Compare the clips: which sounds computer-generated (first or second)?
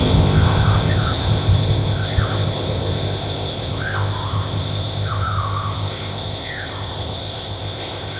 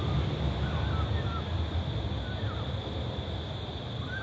first